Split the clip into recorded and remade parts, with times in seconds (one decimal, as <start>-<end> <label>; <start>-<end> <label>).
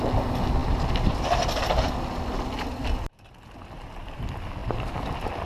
0.0-5.5 recorded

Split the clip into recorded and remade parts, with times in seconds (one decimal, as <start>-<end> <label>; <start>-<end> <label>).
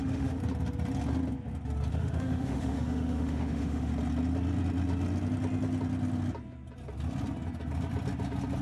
0.0-0.4 remade; 0.4-1.9 recorded; 1.9-3.9 remade; 3.9-8.6 recorded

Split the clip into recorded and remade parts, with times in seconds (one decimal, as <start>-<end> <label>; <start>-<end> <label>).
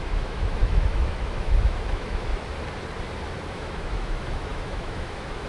0.0-2.3 remade; 2.3-3.5 recorded; 3.5-5.5 remade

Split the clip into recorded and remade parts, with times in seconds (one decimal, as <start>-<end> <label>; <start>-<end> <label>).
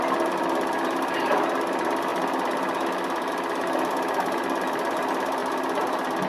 0.0-6.3 recorded